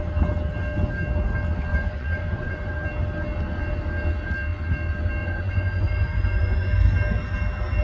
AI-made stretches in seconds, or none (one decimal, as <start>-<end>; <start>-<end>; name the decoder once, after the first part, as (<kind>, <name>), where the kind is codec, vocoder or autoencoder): 1.7-2.7 (vocoder, Vocos); 5.2-6.8